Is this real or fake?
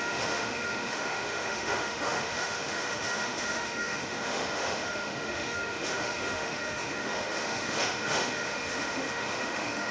fake